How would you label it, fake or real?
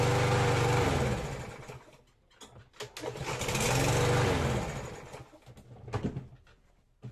real